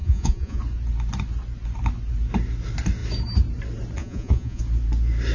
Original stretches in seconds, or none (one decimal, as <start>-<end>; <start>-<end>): 0.6-4.0; 4.6-5.3